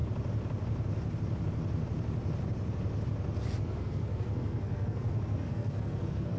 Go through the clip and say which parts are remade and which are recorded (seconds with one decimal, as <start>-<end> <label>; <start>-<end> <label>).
0.0-3.6 recorded; 3.6-6.4 remade

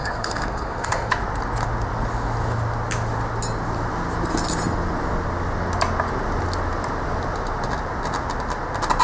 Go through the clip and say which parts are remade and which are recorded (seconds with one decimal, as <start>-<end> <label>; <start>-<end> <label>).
0.0-1.2 remade; 1.2-9.0 recorded

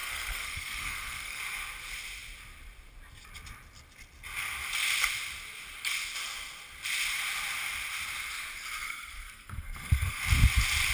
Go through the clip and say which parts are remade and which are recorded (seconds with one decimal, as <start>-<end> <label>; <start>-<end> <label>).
0.0-1.4 remade; 1.4-8.8 recorded; 8.8-10.2 remade; 10.2-10.9 recorded

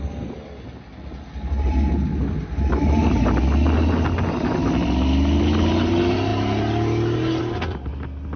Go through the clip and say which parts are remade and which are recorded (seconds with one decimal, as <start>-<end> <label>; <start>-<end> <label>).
0.0-8.4 recorded

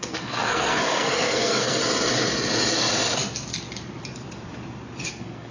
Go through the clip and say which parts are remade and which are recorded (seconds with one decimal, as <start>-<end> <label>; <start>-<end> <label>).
0.0-1.8 remade; 1.8-5.1 recorded; 5.1-5.5 remade

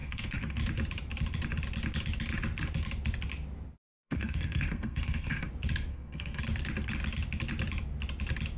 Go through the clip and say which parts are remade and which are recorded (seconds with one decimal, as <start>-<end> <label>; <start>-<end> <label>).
0.0-0.6 remade; 0.6-4.0 recorded; 4.0-5.5 remade; 5.5-5.9 recorded; 5.9-6.4 remade; 6.4-8.6 recorded